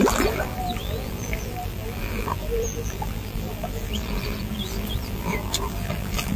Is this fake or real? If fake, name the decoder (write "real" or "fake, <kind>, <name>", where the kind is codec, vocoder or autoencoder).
fake, vocoder, BigVGAN v2